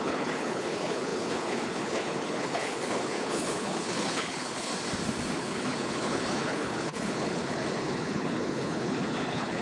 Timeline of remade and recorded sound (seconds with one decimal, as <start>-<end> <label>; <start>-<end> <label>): 0.0-4.7 remade; 4.7-5.4 recorded; 5.4-9.6 remade